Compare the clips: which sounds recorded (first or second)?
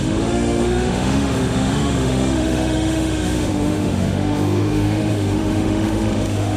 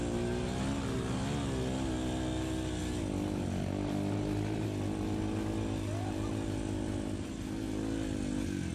second